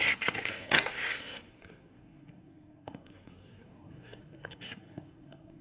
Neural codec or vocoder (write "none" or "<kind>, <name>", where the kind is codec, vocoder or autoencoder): codec, SNAC